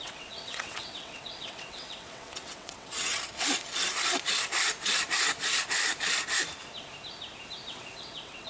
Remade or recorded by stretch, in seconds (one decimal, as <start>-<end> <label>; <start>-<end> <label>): 0.0-3.1 remade; 3.1-7.7 recorded; 7.7-8.5 remade